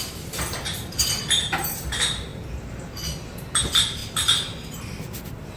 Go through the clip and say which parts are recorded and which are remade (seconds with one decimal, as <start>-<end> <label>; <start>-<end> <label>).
0.0-5.6 recorded